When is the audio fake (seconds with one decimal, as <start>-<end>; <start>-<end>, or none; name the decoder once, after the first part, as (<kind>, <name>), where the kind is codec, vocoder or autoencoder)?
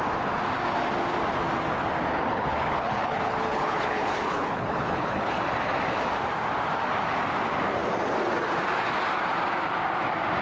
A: 2.1-5.4 (codec, HILCodec)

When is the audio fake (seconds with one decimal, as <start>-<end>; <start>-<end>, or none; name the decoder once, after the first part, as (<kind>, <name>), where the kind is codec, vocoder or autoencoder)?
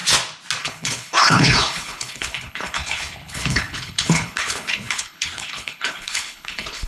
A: 0.6-6.9 (codec, HILCodec)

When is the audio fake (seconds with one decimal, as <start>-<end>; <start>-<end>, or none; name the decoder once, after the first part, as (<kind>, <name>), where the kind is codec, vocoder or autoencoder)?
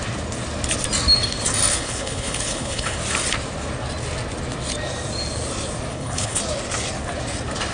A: 1.7-3.0 (codec, HILCodec); 5.9-6.4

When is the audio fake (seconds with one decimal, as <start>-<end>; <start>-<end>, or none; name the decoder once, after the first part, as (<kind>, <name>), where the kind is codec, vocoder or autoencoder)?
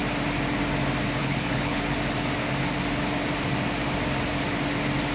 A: 1.2-1.8 (codec, HILCodec)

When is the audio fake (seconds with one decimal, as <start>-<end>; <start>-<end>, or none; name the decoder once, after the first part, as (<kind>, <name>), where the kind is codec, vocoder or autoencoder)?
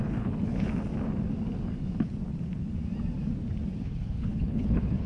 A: 0.0-0.7 (codec, HILCodec); 3.8-5.1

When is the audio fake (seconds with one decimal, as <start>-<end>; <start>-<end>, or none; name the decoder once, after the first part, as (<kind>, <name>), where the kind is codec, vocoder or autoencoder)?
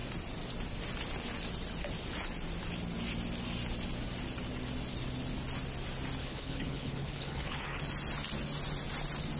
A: 6.2-7.8 (codec, HILCodec)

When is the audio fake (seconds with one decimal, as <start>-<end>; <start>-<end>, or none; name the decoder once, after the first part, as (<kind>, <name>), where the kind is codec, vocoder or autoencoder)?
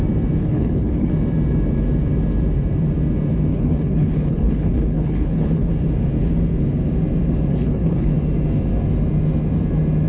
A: 0.4-1.1 (codec, HILCodec); 3.5-5.7; 7.5-8.1